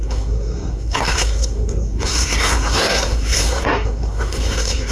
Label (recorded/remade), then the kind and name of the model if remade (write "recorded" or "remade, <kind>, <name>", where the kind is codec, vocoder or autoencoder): remade, codec, SNAC